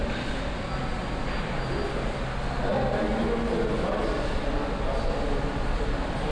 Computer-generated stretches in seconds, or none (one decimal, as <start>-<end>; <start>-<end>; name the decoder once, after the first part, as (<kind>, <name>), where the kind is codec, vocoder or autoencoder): none